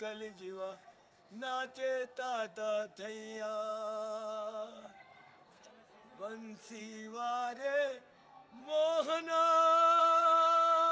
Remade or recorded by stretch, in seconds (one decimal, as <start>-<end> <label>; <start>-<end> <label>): 0.0-5.7 remade; 5.7-6.8 recorded; 6.8-8.6 remade; 8.6-10.0 recorded; 10.0-10.9 remade